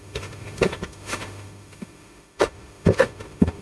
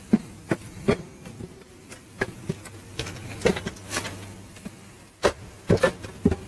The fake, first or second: first